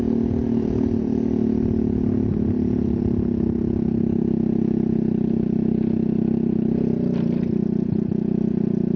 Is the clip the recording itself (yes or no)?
yes